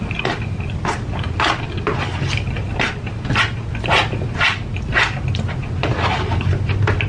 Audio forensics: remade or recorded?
recorded